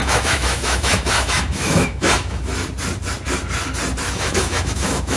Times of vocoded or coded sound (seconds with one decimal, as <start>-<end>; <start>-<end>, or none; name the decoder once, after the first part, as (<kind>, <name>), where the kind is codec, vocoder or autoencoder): 0.0-2.5 (autoencoder, DAC-VAE); 4.1-5.2